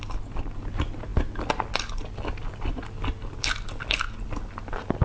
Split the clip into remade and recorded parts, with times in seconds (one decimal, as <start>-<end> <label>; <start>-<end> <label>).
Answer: 0.0-5.0 recorded

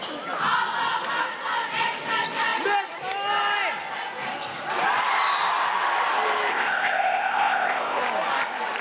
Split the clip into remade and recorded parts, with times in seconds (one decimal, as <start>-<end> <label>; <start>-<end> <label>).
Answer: 0.0-6.5 recorded; 6.5-8.0 remade; 8.0-8.8 recorded

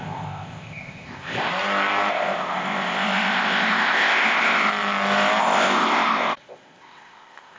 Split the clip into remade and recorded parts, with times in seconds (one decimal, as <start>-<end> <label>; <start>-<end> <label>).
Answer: 0.0-1.5 remade; 1.5-2.1 recorded; 2.1-4.7 remade; 4.7-5.4 recorded; 5.4-7.6 remade

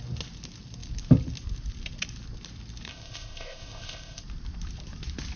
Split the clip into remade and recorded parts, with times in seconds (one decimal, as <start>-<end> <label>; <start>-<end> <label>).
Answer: 0.0-2.9 recorded; 2.9-4.2 remade; 4.2-5.4 recorded

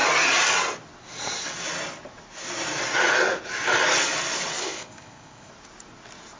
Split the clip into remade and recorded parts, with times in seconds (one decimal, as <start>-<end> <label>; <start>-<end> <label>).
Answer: 0.0-4.6 recorded; 4.6-5.5 remade; 5.5-6.4 recorded

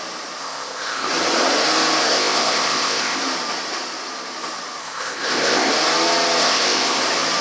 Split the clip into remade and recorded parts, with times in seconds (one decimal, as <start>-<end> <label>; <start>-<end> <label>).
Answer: 0.0-0.4 recorded; 0.4-1.1 remade; 1.1-2.1 recorded; 2.1-3.2 remade; 3.2-4.8 recorded; 4.8-5.7 remade; 5.7-6.4 recorded; 6.4-7.0 remade; 7.0-7.4 recorded

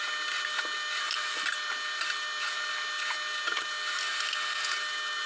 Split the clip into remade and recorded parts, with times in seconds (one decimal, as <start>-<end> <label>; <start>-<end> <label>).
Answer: 0.0-5.3 recorded